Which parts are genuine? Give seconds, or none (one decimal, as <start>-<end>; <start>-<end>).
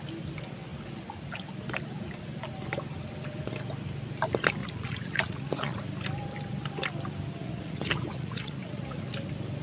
0.0-4.6; 5.8-7.4; 9.1-9.6